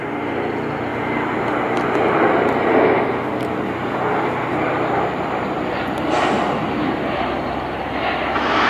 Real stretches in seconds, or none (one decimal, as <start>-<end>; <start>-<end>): 0.0-8.7

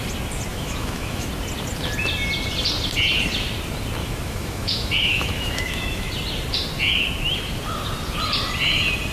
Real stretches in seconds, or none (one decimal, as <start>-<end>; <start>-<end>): 0.0-0.5; 1.3-4.0; 6.1-9.1

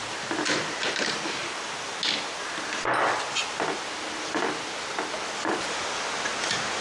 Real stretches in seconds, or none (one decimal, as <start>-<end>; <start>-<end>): 0.0-6.8

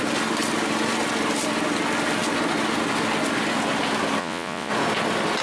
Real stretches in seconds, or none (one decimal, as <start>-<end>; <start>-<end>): 0.0-4.2; 4.7-5.4

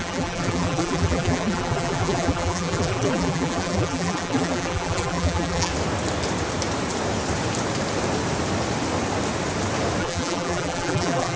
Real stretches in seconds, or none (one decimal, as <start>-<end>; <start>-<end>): 5.7-10.0

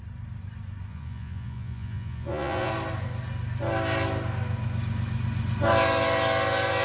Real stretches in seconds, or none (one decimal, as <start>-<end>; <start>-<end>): 0.0-0.9; 2.7-6.8

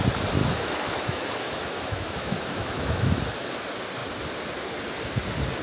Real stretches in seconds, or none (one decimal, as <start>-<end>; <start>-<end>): 0.0-0.4; 3.2-5.6

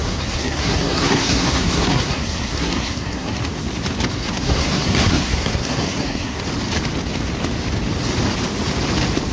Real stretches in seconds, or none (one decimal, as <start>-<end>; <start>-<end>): 3.4-4.2; 6.4-9.3